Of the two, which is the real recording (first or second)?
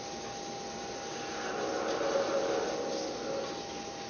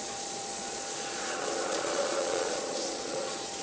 first